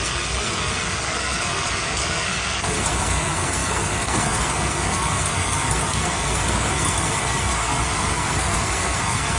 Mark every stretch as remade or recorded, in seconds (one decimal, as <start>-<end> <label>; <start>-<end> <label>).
0.0-9.4 remade